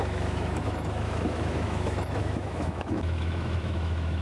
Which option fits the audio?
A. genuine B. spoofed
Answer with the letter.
B